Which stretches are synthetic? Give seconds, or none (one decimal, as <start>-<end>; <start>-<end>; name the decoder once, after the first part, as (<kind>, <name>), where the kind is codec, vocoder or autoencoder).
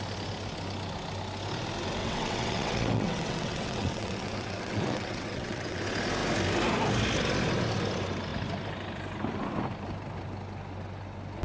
2.0-5.8 (vocoder, WaveNeXt)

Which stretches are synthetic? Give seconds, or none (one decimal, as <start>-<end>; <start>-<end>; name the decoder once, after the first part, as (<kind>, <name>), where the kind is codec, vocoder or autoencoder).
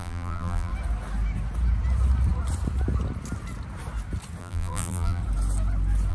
0.0-0.7 (vocoder, BigVGAN v2); 4.4-5.2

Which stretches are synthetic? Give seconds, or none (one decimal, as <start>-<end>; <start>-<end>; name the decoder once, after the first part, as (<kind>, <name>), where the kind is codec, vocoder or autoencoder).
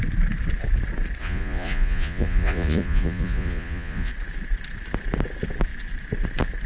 1.2-4.1 (vocoder, Vocos)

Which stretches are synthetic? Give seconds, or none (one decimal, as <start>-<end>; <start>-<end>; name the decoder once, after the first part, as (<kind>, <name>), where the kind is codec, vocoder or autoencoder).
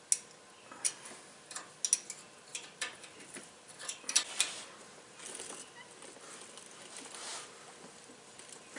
none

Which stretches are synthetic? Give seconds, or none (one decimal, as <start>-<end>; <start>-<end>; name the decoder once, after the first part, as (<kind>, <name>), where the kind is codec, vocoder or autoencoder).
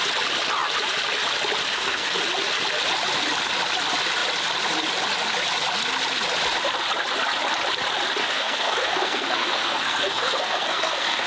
1.7-2.2 (codec, SNAC); 8.2-11.3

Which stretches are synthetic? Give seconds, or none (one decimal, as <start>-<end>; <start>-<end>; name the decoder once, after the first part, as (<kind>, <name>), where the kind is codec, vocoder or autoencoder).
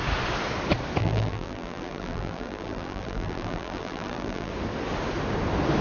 1.0-4.5 (vocoder, BigVGAN v2)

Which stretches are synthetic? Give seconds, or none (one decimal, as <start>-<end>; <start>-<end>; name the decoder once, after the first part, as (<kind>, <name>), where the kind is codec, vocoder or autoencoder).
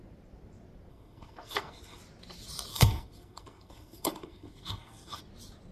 0.9-2.0 (codec, SNAC); 2.7-5.2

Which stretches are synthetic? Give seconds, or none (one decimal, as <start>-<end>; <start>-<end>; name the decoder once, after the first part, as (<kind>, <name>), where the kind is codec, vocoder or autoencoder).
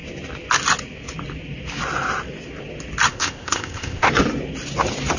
3.1-4.1 (codec, ZipCodec)